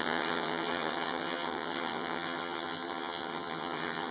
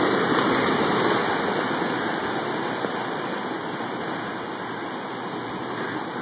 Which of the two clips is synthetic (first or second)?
first